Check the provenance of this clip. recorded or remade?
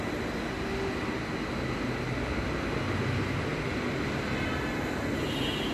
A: recorded